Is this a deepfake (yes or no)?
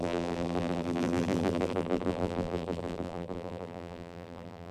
yes